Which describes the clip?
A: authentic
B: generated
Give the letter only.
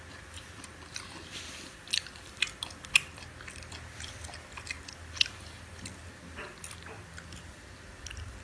A